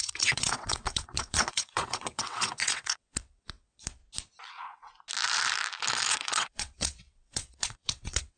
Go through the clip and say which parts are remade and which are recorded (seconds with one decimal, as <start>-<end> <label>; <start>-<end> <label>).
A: 0.0-4.0 remade; 4.0-4.5 recorded; 4.5-4.9 remade; 4.9-6.1 recorded; 6.1-8.4 remade